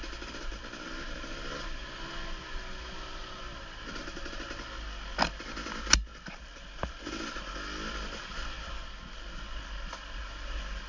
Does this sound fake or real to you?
real